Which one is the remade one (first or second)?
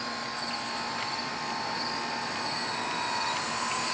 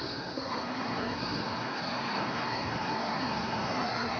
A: second